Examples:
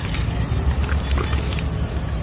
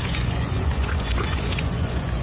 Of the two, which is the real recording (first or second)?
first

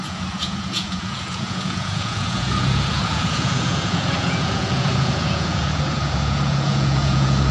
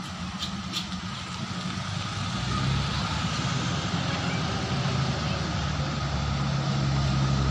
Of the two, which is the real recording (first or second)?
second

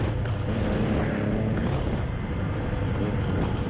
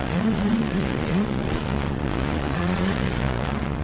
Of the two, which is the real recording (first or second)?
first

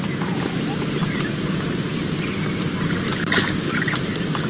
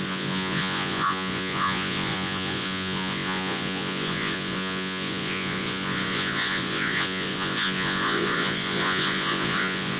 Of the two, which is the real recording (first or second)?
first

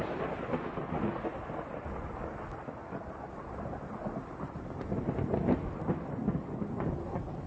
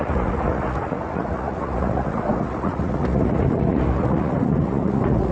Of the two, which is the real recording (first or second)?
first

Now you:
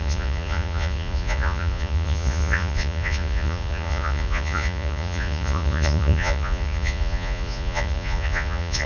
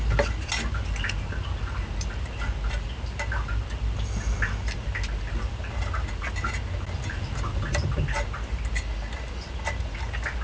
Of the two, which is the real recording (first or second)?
second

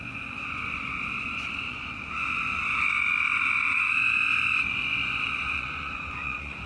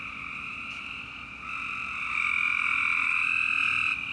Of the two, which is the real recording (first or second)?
second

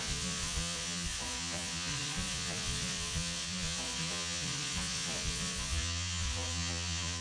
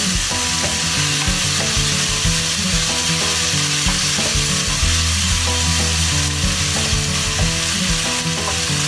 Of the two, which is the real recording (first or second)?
second